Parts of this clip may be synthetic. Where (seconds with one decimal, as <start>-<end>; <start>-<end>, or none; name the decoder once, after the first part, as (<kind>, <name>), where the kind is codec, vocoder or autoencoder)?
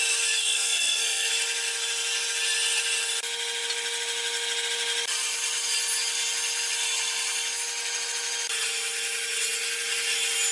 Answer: 0.4-1.3 (codec, SNAC)